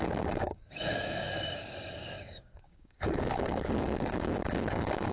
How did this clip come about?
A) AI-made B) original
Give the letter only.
A